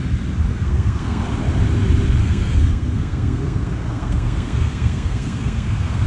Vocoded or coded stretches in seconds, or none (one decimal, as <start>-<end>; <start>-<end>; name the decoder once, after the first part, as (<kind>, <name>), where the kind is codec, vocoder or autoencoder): 0.5-1.2 (codec, SNAC); 2.2-6.1